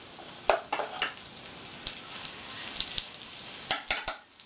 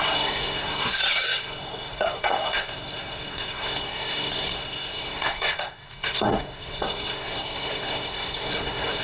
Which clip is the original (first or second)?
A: first